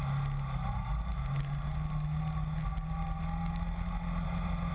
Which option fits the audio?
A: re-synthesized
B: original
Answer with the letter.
B